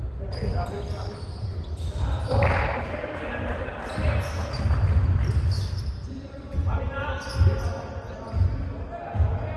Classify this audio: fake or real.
real